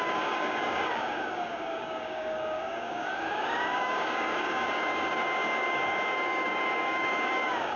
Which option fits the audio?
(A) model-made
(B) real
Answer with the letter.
A